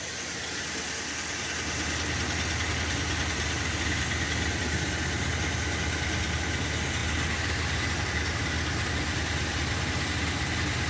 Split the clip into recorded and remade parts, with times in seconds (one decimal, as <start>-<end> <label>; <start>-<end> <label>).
0.0-10.9 recorded